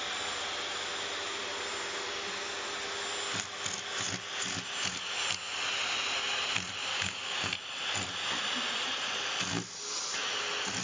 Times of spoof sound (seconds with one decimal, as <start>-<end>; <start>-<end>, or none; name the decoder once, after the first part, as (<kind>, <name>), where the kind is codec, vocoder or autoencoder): 6.9-7.5 (codec, DAC)